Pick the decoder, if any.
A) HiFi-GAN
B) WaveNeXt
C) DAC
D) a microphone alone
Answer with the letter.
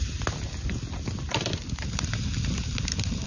D